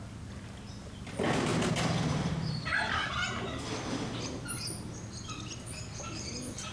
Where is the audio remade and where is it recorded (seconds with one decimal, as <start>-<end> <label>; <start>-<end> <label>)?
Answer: 0.0-6.7 recorded